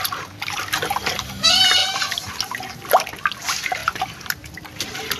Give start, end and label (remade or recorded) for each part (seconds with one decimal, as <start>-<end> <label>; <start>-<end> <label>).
0.0-5.2 recorded